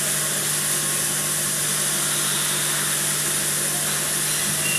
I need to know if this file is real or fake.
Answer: real